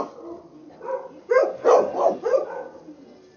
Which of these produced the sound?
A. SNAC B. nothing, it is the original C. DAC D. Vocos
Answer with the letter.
B